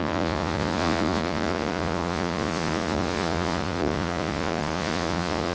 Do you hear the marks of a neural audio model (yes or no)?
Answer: yes